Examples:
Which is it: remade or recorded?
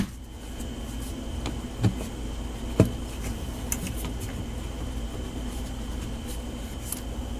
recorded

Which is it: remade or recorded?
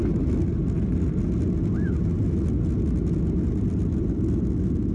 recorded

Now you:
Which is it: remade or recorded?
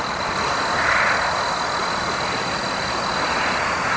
recorded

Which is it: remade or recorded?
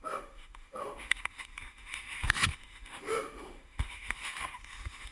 remade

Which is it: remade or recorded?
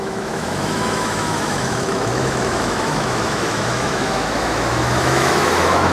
remade